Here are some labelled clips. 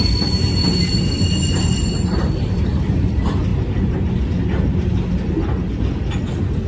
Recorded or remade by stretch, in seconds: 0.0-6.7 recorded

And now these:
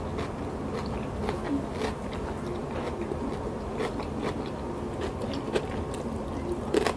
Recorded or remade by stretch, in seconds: 0.0-7.0 recorded

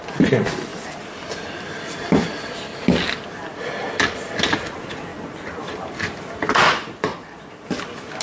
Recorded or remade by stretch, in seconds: 0.0-8.2 recorded

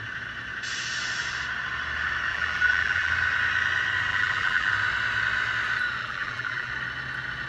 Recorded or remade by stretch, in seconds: 0.0-2.3 recorded; 2.3-3.1 remade; 3.1-4.1 recorded; 4.1-4.7 remade; 4.7-6.0 recorded; 6.0-6.7 remade; 6.7-7.5 recorded

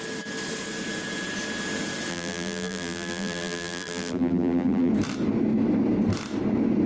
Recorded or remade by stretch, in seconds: 0.0-2.1 recorded; 2.1-4.9 remade; 4.9-6.9 recorded

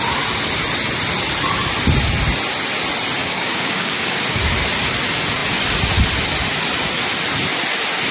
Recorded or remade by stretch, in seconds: 0.0-3.2 recorded; 3.2-4.4 remade; 4.4-8.1 recorded

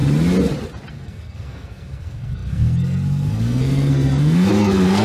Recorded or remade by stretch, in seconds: 0.0-0.9 recorded; 0.9-5.0 remade